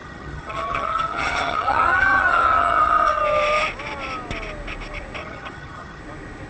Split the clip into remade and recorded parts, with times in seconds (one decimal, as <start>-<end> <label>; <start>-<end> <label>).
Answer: 0.0-3.2 remade; 3.2-5.2 recorded; 5.2-6.0 remade; 6.0-6.5 recorded

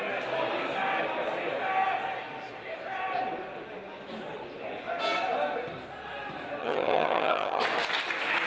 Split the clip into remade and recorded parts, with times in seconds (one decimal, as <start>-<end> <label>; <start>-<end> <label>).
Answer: 0.0-6.6 recorded; 6.6-7.6 remade; 7.6-8.5 recorded

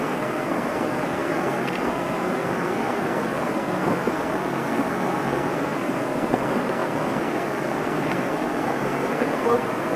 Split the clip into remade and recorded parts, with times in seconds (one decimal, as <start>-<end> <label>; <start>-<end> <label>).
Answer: 0.0-10.0 remade

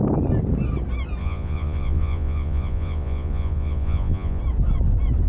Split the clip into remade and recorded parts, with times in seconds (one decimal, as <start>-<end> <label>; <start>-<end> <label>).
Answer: 0.0-1.2 recorded; 1.2-4.4 remade; 4.4-5.3 recorded

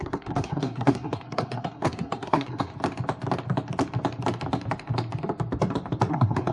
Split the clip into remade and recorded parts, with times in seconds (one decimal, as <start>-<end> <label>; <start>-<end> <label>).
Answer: 0.0-2.7 remade; 2.7-6.1 recorded; 6.1-6.5 remade

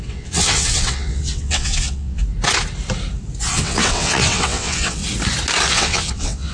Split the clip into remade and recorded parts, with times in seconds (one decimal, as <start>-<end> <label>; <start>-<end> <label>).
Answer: 0.0-2.2 remade; 2.2-3.5 recorded; 3.5-5.0 remade; 5.0-5.7 recorded; 5.7-6.5 remade

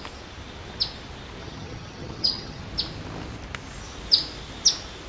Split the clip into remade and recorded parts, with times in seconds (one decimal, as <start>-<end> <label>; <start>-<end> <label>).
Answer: 0.0-1.4 recorded; 1.4-2.6 remade; 2.6-5.1 recorded

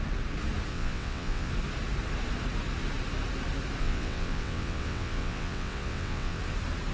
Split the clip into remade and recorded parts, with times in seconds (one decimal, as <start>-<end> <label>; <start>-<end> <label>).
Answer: 0.0-0.7 recorded; 0.7-1.5 remade; 1.5-3.8 recorded; 3.8-6.4 remade; 6.4-6.9 recorded